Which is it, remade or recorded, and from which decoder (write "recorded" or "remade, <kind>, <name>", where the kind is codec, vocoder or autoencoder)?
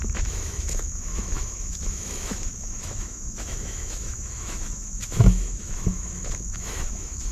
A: remade, autoencoder, DAC-VAE